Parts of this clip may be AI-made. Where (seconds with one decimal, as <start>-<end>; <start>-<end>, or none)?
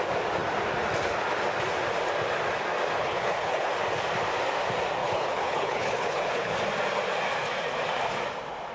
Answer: 3.0-3.7; 5.0-6.5